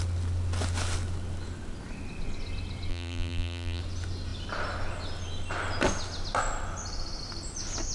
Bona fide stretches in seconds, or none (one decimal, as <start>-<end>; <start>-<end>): 0.0-2.9; 3.8-7.9